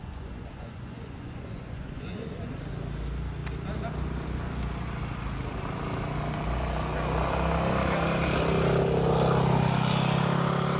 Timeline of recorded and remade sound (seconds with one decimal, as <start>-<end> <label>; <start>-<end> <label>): 0.0-2.5 remade; 2.5-10.8 recorded